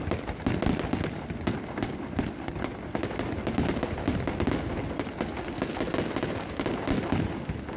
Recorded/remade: recorded